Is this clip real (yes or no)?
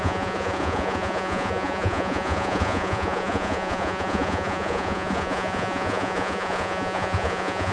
no